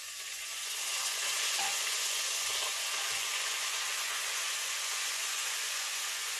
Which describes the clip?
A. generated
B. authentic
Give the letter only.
A